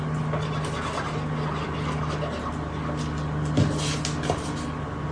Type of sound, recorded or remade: recorded